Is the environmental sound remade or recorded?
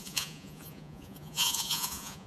remade